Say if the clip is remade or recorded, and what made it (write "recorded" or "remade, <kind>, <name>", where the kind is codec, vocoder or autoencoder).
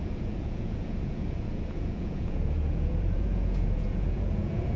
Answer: remade, vocoder, Vocos